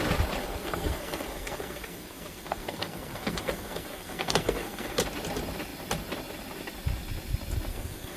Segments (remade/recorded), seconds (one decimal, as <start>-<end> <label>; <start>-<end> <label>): 0.0-0.4 recorded; 0.4-5.0 remade; 5.0-7.7 recorded; 7.7-8.2 remade